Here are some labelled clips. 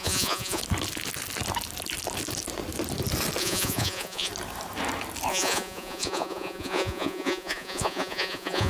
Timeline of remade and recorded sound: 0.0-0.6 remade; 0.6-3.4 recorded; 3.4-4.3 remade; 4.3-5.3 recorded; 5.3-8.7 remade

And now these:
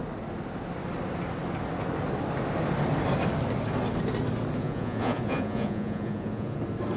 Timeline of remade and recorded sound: 0.0-4.6 recorded; 4.6-6.6 remade; 6.6-7.0 recorded

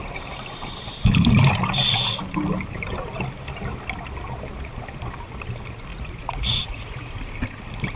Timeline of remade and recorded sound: 0.0-5.9 recorded; 5.9-7.1 remade; 7.1-8.0 recorded

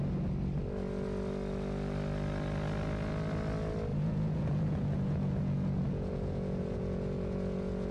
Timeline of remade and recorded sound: 0.0-3.9 recorded; 3.9-7.9 remade

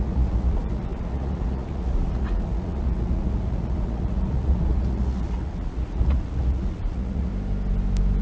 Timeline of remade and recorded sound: 0.0-7.3 remade; 7.3-8.2 recorded

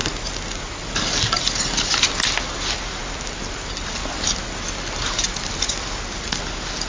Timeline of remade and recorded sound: 0.0-6.9 recorded

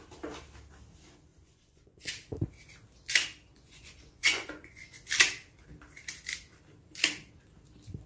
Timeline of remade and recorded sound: 0.0-1.3 recorded; 1.3-2.1 remade; 2.1-3.5 recorded; 3.5-5.1 remade; 5.1-8.1 recorded

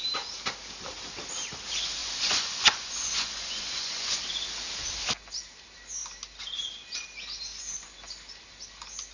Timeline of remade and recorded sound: 0.0-2.0 recorded; 2.0-4.2 remade; 4.2-7.5 recorded; 7.5-8.0 remade; 8.0-9.1 recorded